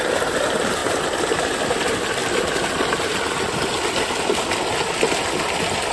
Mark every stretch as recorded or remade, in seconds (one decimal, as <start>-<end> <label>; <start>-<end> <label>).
0.0-5.9 recorded